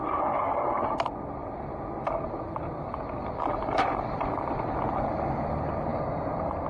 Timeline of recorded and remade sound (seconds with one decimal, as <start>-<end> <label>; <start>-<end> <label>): 0.0-6.7 recorded